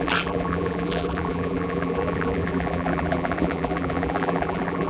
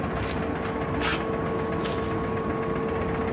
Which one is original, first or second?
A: second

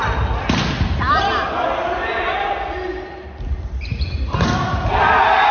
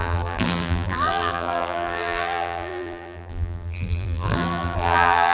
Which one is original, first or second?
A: first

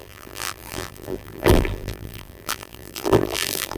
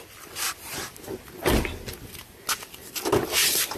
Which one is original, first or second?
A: second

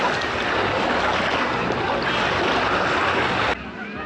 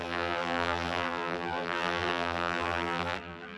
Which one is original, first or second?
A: first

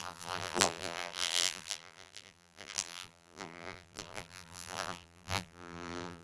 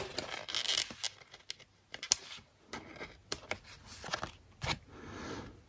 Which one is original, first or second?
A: second